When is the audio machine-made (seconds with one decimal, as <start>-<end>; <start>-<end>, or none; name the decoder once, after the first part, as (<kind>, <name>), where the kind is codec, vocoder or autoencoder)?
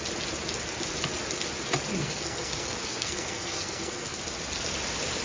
2.0-4.2 (codec, SNAC)